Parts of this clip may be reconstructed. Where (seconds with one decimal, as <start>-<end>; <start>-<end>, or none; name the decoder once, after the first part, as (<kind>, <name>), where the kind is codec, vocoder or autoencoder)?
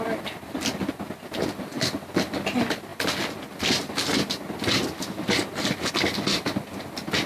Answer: none